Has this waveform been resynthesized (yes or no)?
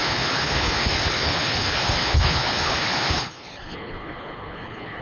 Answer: yes